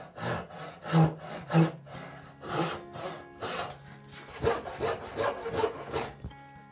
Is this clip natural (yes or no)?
yes